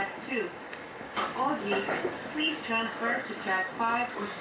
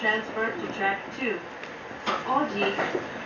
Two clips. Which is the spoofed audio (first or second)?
first